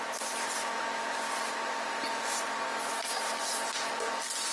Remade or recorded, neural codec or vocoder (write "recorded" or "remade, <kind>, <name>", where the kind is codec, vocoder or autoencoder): recorded